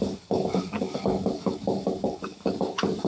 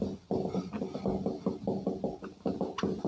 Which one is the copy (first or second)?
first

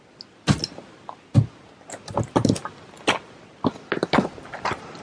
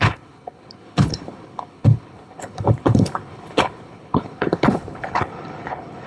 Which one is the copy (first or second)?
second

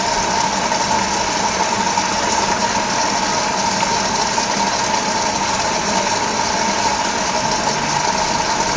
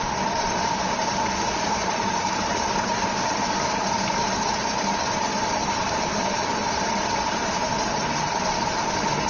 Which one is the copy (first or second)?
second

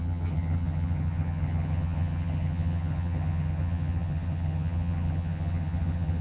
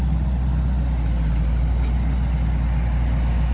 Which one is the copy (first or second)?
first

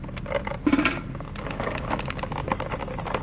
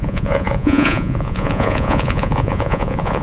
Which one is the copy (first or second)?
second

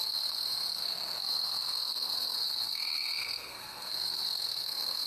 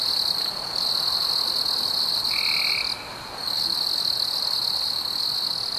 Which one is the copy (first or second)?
first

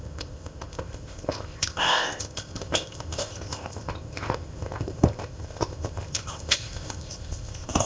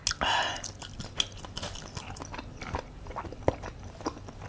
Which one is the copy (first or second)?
first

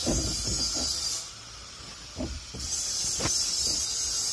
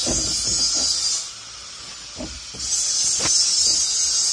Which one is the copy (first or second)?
first